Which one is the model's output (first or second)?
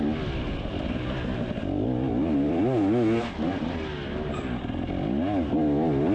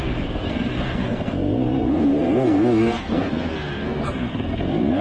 second